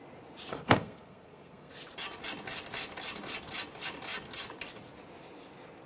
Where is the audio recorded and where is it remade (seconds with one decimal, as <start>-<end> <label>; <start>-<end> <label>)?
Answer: 0.0-0.5 recorded; 0.5-1.7 remade; 1.7-5.9 recorded